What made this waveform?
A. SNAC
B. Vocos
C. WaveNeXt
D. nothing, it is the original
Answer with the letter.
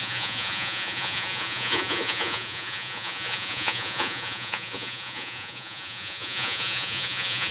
B